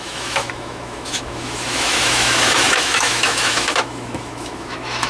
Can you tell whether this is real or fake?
fake